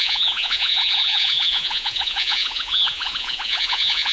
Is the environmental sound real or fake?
fake